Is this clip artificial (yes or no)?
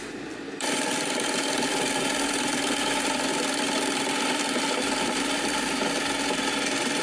yes